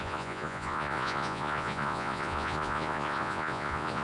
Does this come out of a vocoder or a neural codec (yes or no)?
yes